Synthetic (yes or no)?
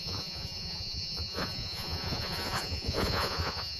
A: yes